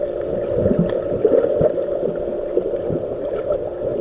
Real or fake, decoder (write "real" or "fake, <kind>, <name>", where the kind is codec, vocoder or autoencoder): real